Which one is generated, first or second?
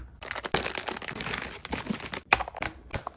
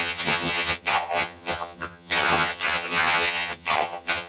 second